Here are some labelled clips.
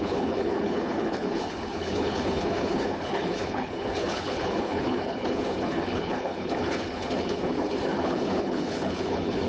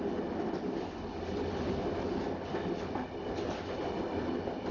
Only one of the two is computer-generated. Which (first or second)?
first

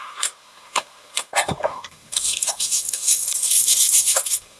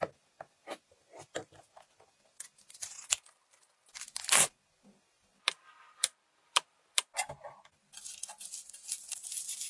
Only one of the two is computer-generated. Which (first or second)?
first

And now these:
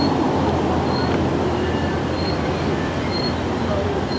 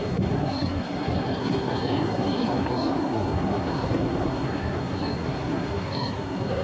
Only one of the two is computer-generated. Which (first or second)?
second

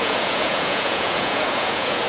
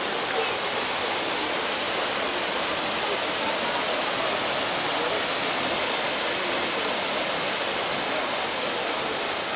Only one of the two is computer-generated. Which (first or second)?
first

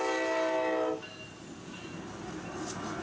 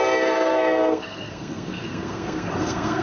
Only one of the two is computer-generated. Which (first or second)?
second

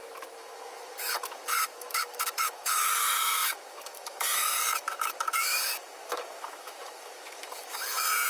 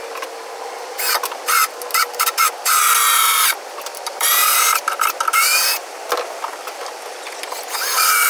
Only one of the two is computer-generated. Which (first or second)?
first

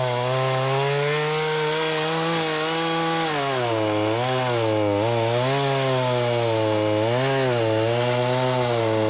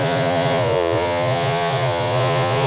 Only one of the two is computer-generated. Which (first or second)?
second